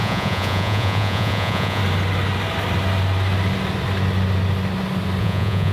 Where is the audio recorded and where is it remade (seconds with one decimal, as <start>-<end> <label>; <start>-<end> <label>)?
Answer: 0.0-1.8 remade; 1.8-5.2 recorded; 5.2-5.7 remade